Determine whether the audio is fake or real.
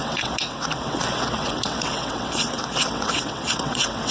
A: fake